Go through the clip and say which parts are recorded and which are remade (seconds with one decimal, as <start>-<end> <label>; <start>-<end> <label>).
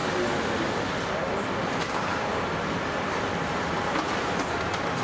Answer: 0.0-5.0 recorded